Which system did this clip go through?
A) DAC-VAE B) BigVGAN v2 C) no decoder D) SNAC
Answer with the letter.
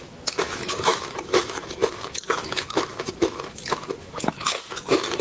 A